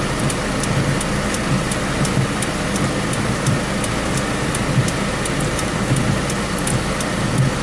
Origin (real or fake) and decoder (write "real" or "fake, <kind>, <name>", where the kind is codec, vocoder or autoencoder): real